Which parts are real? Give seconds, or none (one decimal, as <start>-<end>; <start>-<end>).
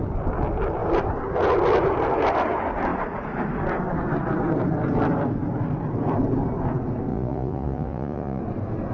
0.0-7.1; 8.4-8.9